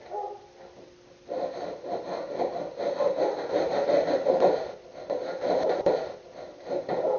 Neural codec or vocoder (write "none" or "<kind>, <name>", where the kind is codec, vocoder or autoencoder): none